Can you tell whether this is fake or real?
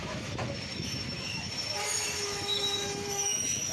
fake